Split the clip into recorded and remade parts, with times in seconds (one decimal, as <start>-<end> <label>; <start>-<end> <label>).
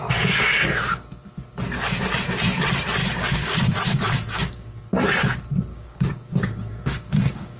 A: 0.0-3.0 recorded; 3.0-4.9 remade; 4.9-5.7 recorded; 5.7-7.6 remade